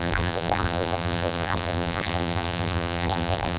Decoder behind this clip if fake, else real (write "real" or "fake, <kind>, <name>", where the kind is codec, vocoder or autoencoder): fake, vocoder, BigVGAN v2